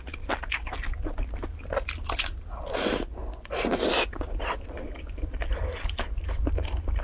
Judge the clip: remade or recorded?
recorded